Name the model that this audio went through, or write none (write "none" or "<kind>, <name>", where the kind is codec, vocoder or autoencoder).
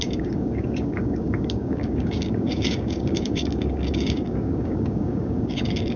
codec, DAC